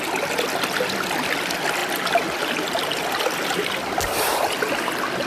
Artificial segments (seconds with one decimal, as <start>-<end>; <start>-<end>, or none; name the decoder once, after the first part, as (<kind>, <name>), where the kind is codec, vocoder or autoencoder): none